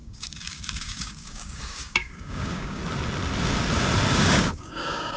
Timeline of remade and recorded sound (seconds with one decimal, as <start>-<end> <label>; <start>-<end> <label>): 0.0-2.8 remade; 2.8-4.1 recorded; 4.1-5.2 remade